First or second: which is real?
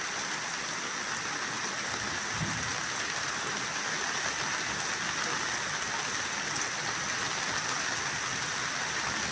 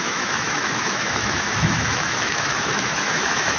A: first